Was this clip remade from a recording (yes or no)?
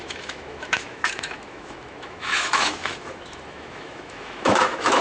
yes